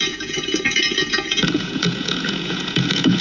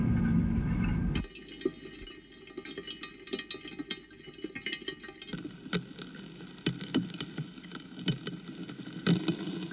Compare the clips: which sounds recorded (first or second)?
second